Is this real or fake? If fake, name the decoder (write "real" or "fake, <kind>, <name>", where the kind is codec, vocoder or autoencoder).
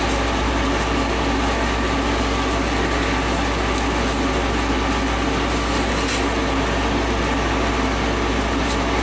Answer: real